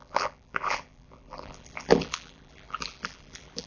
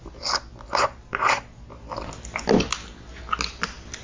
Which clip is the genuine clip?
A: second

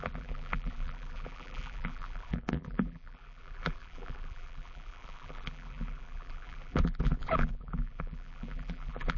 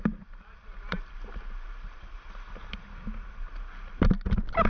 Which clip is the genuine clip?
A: second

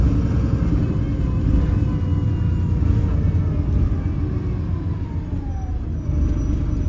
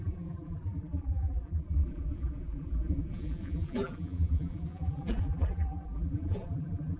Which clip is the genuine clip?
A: first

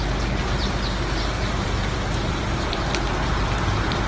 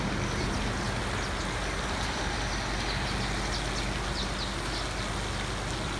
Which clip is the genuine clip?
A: second